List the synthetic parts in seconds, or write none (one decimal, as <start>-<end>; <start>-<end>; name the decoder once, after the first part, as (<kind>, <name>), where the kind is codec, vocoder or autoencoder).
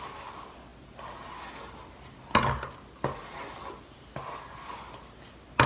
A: none